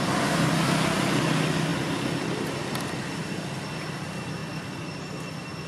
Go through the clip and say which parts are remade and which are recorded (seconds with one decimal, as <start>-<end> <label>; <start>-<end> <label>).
0.0-5.7 recorded